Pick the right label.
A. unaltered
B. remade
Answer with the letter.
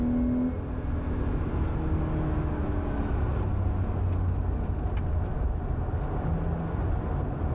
A